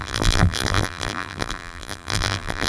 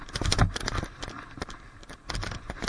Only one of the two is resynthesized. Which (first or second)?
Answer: first